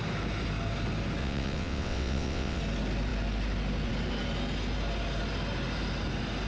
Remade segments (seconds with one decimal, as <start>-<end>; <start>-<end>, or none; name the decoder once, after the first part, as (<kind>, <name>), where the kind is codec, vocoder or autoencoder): 1.2-2.6 (vocoder, WaveNeXt)